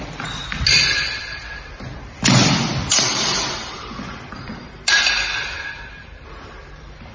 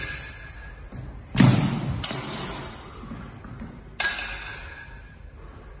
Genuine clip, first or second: second